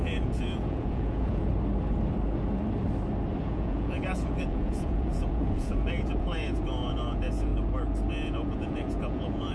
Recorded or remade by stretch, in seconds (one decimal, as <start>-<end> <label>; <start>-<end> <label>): 0.0-1.5 remade; 1.5-3.4 recorded; 3.4-7.5 remade; 7.5-8.1 recorded; 8.1-9.5 remade